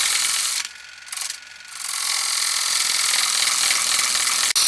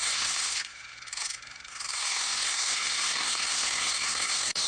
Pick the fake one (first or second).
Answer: second